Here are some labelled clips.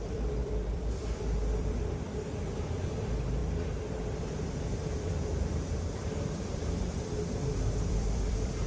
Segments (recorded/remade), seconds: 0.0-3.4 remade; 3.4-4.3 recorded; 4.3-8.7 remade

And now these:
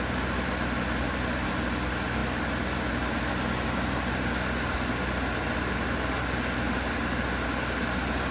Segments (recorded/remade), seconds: 0.0-8.3 recorded

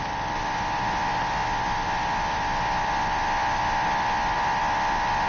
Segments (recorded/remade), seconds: 0.0-5.3 recorded

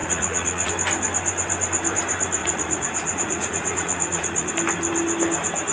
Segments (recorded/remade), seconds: 0.0-0.7 remade; 0.7-2.4 recorded; 2.4-4.5 remade; 4.5-5.7 recorded

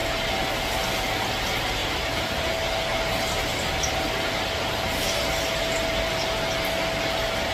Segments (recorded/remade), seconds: 0.0-7.5 recorded

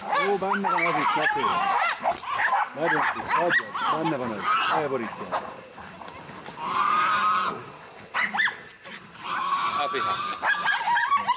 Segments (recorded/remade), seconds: 0.0-11.4 recorded

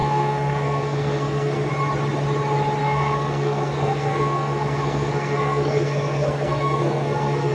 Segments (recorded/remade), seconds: 0.0-1.7 remade; 1.7-2.8 recorded; 2.8-7.5 remade